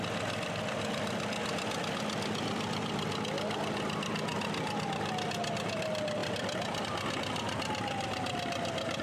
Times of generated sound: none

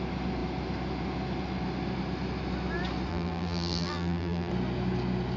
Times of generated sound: 3.1-4.5 (vocoder, BigVGAN v2)